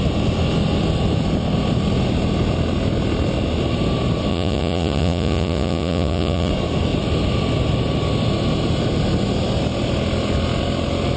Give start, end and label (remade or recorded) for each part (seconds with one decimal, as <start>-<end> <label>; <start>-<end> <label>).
0.0-4.3 recorded; 4.3-6.5 remade; 6.5-11.2 recorded